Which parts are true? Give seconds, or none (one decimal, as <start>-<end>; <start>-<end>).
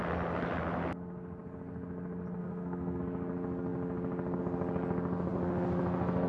0.0-2.4; 3.0-6.3